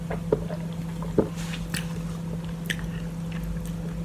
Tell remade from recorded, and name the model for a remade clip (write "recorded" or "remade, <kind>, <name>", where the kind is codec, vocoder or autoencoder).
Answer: recorded